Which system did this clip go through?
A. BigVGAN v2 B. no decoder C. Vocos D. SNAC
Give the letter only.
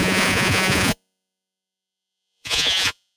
C